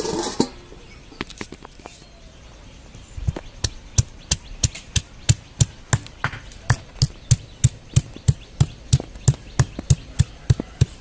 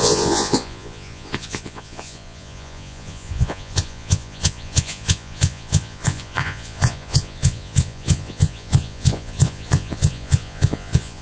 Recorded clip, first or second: first